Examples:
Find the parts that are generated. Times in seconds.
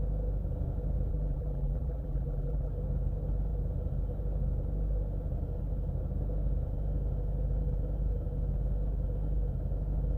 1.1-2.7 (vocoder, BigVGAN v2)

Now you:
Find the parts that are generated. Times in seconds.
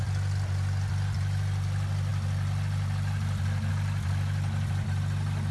none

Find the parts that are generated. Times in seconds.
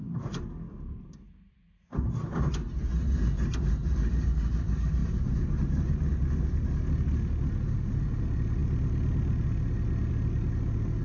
none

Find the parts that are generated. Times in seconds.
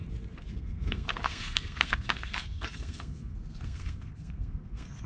0.5-5.1 (codec, SNAC)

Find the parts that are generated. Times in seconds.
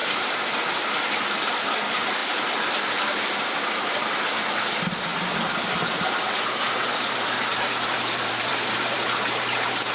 0.0-0.5 (vocoder, BigVGAN v2); 5.1-6.0; 7.5-9.0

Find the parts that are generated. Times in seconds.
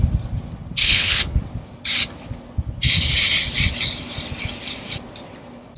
0.8-1.4 (codec, HILCodec)